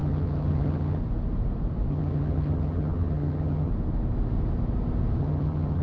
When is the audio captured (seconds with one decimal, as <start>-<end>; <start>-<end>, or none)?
1.0-1.9; 3.7-5.2